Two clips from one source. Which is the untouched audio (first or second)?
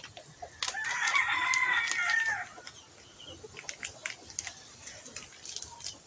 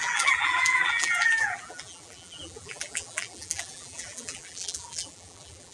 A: first